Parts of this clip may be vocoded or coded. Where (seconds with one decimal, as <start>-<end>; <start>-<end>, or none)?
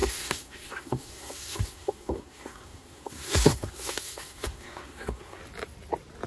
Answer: 0.0-5.4